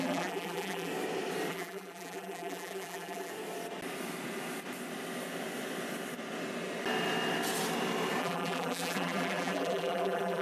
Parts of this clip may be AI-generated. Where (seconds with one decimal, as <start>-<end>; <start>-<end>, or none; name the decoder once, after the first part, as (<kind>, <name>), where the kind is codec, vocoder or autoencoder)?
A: 0.0-0.9 (vocoder, BigVGAN v2); 1.5-3.3; 8.2-10.4